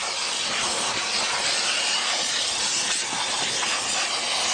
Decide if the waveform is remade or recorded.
recorded